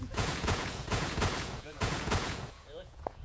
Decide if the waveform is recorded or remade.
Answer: remade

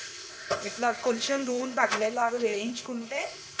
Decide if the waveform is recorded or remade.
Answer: remade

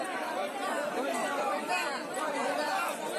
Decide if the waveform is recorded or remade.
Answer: remade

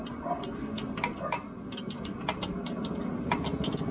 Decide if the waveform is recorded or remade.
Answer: recorded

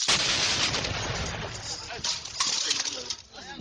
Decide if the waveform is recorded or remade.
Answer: recorded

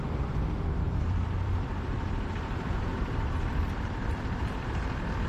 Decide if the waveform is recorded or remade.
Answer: remade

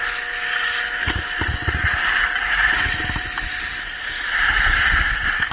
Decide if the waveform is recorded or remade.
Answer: recorded